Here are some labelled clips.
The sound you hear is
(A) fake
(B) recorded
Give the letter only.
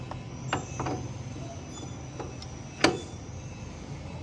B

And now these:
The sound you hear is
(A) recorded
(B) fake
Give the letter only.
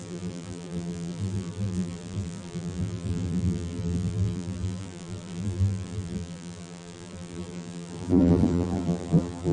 B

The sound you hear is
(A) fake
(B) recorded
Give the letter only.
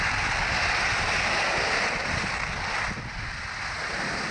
B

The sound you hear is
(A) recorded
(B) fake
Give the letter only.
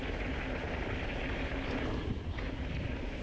A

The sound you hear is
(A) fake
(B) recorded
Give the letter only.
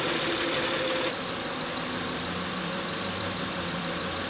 A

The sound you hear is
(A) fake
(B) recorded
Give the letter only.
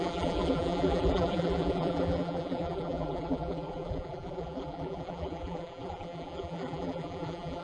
A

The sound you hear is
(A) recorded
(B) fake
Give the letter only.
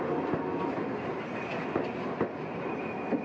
A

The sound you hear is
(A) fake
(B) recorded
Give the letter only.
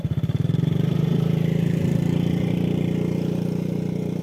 A